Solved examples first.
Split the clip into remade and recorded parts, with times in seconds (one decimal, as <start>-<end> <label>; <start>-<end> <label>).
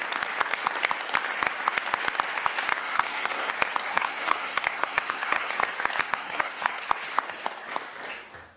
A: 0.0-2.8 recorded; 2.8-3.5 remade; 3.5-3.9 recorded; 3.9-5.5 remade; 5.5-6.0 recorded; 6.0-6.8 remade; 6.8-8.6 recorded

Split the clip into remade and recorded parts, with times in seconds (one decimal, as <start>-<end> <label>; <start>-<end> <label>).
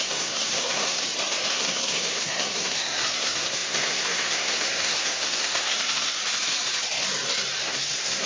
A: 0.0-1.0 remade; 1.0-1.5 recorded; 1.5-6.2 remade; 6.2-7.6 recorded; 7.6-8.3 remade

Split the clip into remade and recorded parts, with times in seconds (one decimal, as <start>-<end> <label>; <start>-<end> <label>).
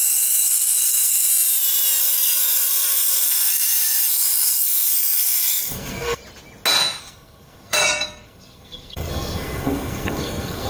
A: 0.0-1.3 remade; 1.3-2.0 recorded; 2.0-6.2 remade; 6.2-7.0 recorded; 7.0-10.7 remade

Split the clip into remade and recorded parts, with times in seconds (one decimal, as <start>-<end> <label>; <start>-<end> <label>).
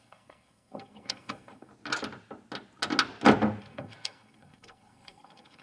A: 0.0-1.7 remade; 1.7-3.6 recorded; 3.6-5.6 remade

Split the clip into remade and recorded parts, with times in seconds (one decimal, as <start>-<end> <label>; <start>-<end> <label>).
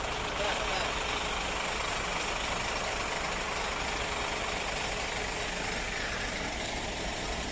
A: 0.0-7.5 recorded